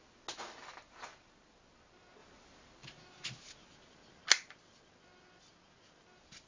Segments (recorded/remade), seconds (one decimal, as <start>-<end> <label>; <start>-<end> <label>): 0.0-6.5 recorded